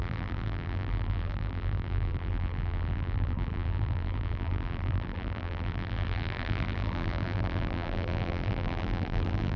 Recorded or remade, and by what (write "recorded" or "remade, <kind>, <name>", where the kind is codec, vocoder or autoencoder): remade, vocoder, BigVGAN v2